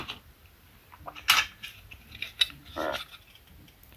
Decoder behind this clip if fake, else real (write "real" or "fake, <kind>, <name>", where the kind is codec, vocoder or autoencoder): real